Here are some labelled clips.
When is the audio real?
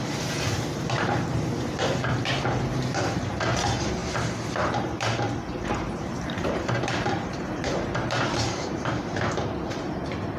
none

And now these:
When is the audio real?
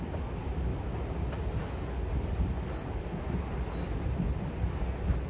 0.0-5.3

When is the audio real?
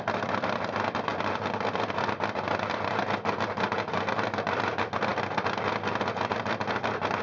0.0-7.2